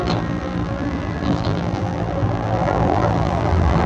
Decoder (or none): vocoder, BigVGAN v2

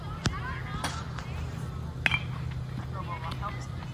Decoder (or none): none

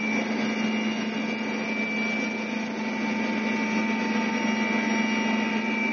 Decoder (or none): none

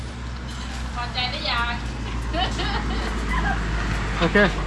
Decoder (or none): none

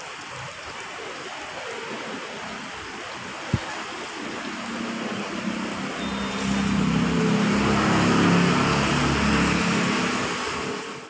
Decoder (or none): none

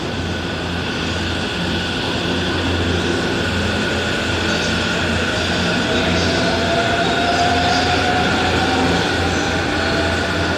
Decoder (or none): none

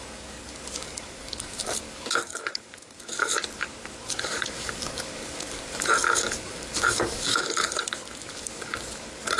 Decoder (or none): codec, DAC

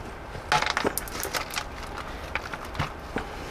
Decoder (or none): none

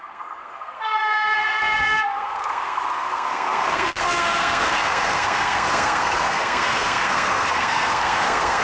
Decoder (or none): codec, SNAC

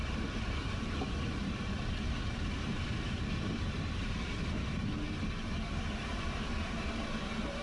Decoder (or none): vocoder, BigVGAN v2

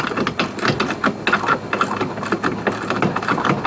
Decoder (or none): none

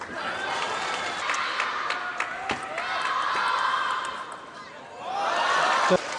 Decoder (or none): none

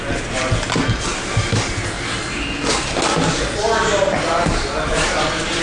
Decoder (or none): none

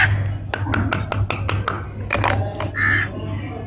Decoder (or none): none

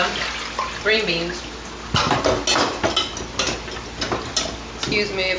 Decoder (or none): none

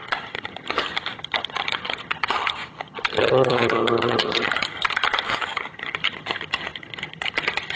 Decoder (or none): vocoder, HiFi-GAN